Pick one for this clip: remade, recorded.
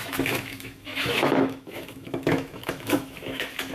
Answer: remade